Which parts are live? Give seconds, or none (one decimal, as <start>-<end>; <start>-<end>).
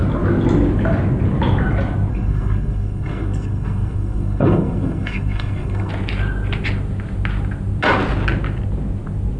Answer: 0.0-2.1; 5.9-9.4